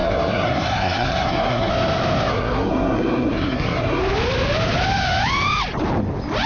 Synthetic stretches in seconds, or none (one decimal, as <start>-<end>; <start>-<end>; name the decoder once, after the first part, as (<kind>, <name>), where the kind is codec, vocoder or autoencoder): 0.0-1.7 (codec, SNAC); 2.3-4.0